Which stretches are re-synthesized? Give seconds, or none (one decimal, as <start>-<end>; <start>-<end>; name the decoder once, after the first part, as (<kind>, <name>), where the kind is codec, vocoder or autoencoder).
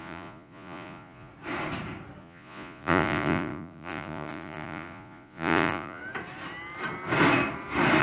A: 0.0-1.3 (vocoder, Vocos); 2.2-6.0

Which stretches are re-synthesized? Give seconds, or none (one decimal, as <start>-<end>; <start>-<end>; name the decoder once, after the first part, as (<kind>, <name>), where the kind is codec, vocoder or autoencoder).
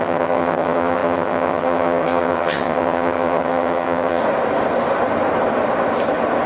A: 0.0-4.2 (vocoder, HiFi-GAN)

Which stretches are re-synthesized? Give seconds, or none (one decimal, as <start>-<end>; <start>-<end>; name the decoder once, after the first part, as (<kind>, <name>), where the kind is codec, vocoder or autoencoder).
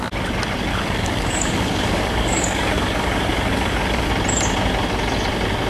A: 0.7-4.1 (codec, DAC)